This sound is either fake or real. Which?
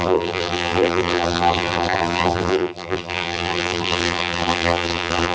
fake